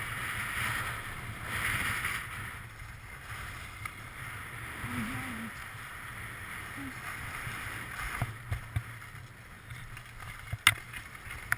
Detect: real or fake real